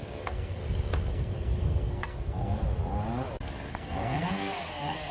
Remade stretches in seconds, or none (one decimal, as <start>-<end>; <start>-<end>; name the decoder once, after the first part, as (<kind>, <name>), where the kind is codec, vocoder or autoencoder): 0.0-0.6 (codec, SNAC); 1.1-2.6; 3.7-5.1